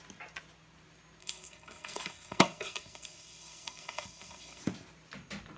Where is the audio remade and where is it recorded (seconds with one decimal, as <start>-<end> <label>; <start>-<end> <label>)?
0.0-1.2 recorded; 1.2-4.6 remade; 4.6-5.6 recorded